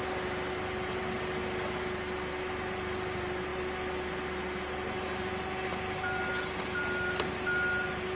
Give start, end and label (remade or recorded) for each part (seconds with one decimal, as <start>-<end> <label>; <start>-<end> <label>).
0.0-8.2 recorded